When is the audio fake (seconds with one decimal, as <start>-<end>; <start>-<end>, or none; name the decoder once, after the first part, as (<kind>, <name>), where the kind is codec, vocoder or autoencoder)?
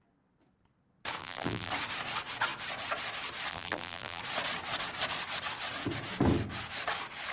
1.2-1.7 (vocoder, BigVGAN v2); 3.5-4.2